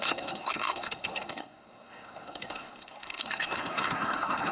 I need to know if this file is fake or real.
fake